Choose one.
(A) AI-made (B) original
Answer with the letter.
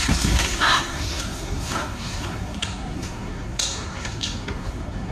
A